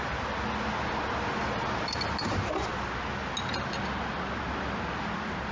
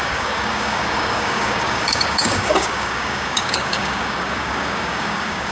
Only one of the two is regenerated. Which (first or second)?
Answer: second